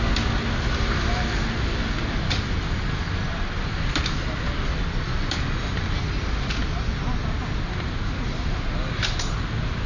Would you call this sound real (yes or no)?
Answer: yes